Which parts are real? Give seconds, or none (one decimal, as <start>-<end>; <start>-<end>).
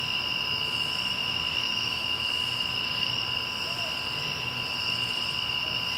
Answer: 0.0-1.2; 3.2-6.0